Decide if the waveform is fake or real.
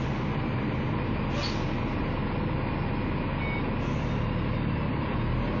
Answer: real